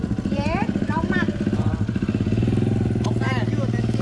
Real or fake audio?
real